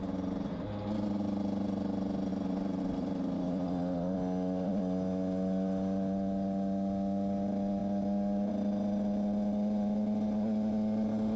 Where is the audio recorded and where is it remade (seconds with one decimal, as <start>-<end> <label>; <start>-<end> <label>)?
0.0-11.4 recorded